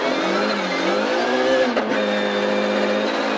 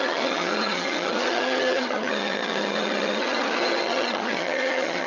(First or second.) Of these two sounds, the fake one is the second